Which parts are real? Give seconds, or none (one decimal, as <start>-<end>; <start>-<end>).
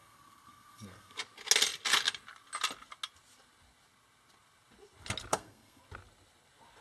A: 1.2-5.3; 5.8-6.8